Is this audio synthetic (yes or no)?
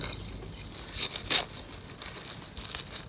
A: no